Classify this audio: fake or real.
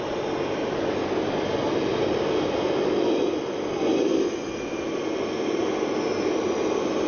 real